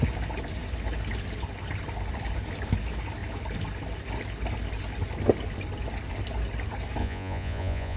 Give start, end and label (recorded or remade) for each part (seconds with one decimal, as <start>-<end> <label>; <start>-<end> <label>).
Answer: 0.0-7.0 recorded; 7.0-8.0 remade